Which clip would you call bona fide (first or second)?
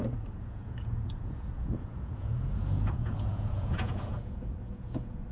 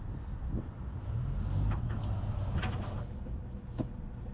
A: second